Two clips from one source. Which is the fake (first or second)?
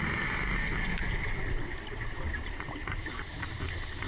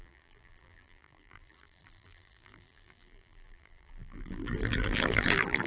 second